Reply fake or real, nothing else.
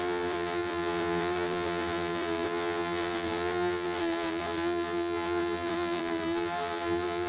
fake